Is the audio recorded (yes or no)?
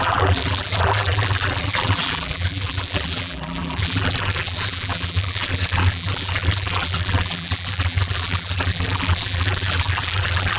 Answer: no